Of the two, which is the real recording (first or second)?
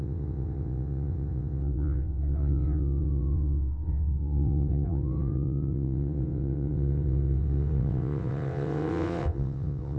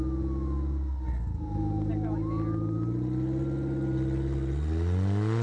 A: second